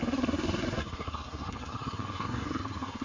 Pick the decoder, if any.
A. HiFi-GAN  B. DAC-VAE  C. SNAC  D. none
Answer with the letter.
C